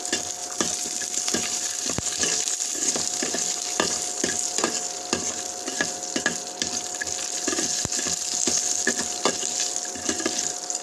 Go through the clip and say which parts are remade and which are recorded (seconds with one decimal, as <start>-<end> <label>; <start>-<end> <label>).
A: 0.0-0.4 recorded; 0.4-3.3 remade; 3.3-10.8 recorded